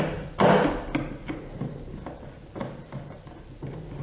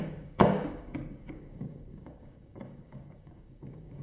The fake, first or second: second